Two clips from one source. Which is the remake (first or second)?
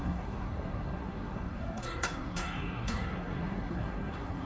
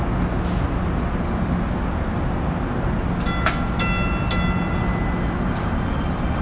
first